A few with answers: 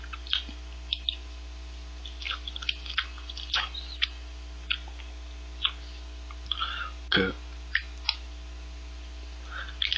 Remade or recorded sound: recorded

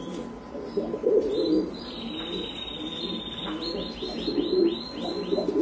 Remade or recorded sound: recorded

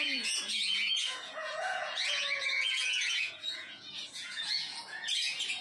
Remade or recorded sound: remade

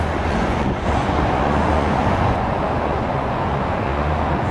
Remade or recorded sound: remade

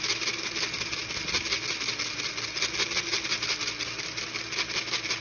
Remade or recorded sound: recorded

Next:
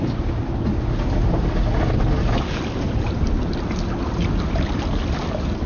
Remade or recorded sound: recorded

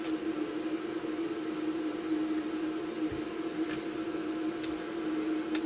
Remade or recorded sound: recorded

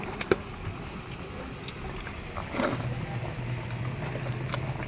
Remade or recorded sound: recorded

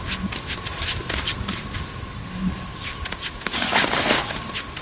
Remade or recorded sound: recorded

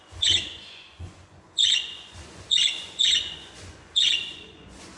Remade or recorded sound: remade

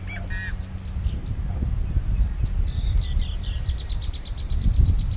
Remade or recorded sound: recorded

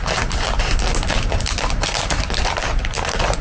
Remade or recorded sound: recorded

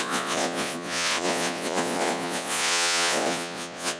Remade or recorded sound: remade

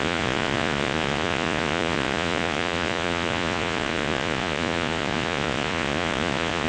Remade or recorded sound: remade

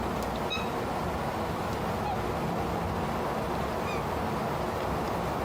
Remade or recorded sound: recorded